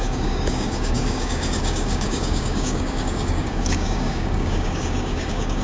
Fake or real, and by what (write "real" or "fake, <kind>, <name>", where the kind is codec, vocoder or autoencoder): fake, codec, DAC